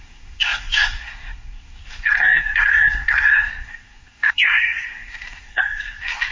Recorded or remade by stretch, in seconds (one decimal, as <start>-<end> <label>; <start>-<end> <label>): 0.0-6.3 remade